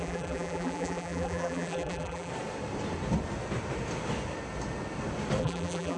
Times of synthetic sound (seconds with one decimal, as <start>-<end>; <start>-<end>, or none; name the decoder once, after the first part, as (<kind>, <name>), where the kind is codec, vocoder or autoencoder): 0.0-2.3 (vocoder, BigVGAN v2); 5.4-6.0